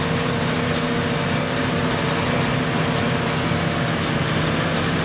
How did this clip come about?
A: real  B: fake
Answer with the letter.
A